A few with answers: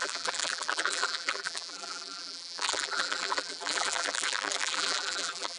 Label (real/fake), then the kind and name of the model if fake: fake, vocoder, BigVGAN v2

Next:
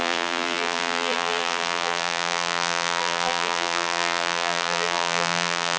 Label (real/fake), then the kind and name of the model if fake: fake, vocoder, BigVGAN v2